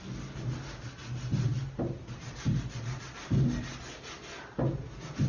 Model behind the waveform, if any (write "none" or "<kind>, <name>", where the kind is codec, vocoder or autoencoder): none